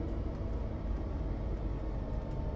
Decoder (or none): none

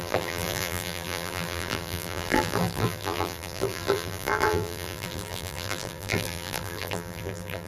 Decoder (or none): vocoder, BigVGAN v2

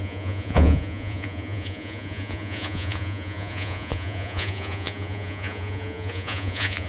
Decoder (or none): vocoder, Vocos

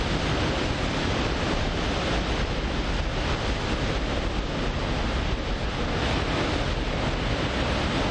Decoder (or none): none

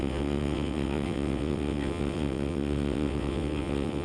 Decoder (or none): vocoder, WaveNeXt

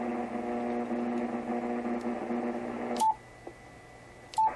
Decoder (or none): none